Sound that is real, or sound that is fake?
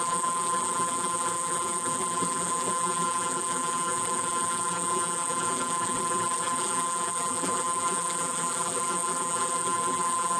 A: fake